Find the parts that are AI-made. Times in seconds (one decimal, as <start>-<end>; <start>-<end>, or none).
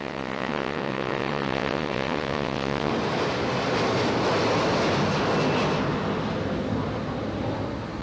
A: 0.0-2.9